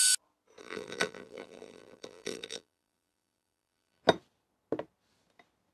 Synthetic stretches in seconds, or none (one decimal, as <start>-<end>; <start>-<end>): 0.6-4.0

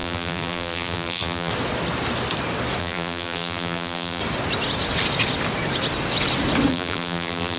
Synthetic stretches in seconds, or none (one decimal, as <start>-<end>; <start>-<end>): 0.0-1.5; 2.8-4.2; 6.7-7.6

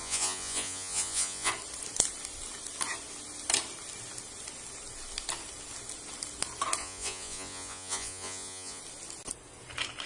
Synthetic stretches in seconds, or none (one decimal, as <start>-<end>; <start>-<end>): 0.0-1.5; 6.8-8.8